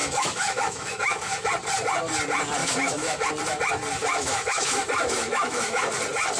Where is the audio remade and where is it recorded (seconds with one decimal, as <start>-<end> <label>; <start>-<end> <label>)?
0.0-1.5 remade; 1.5-2.6 recorded; 2.6-3.3 remade; 3.3-4.1 recorded; 4.1-5.9 remade; 5.9-6.4 recorded

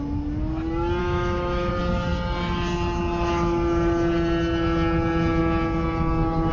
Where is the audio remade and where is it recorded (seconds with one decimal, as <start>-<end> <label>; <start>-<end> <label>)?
0.0-1.0 recorded; 1.0-1.7 remade; 1.7-6.5 recorded

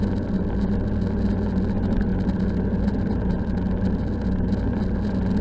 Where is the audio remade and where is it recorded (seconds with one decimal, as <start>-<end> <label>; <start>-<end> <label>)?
0.0-5.4 recorded

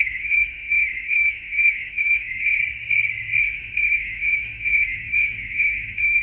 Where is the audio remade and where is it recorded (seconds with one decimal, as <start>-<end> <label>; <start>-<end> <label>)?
0.0-2.6 remade; 2.6-3.4 recorded; 3.4-6.2 remade